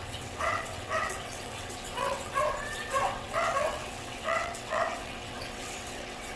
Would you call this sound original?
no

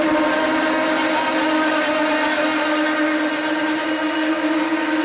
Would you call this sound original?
yes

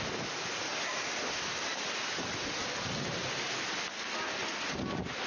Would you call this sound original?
yes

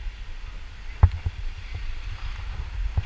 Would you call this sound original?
yes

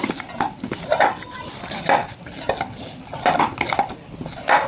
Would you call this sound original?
yes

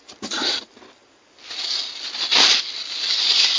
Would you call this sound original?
yes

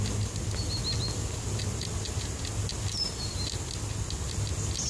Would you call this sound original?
yes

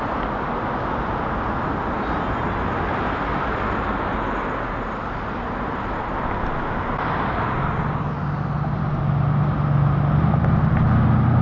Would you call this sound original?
yes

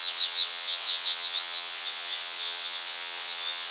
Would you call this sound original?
no